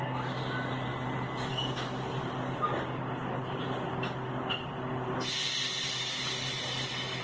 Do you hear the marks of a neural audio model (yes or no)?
no